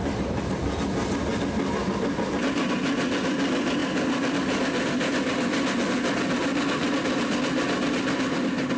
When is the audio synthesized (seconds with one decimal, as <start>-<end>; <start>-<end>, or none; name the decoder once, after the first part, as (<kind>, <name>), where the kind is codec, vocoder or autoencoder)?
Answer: none